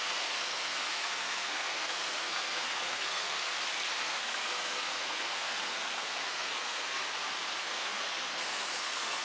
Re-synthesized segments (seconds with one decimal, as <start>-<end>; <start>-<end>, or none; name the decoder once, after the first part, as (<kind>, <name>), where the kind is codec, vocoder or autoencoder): 0.0-3.5 (codec, SNAC); 4.0-7.0; 7.6-9.2